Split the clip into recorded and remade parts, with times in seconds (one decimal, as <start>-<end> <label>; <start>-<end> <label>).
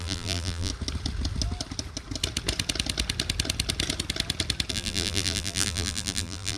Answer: 0.0-0.7 remade; 0.7-4.7 recorded; 4.7-6.6 remade